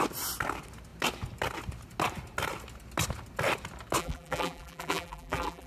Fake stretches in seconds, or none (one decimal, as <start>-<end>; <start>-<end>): 4.0-5.7